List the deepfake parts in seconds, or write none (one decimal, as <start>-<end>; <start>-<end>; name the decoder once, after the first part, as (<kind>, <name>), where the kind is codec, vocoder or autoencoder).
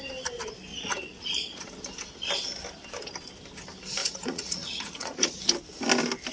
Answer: 0.7-1.7 (vocoder, Vocos); 4.0-5.4